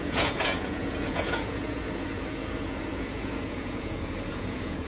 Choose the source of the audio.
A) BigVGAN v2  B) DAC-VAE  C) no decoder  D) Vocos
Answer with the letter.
D